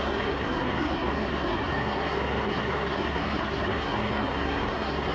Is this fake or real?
fake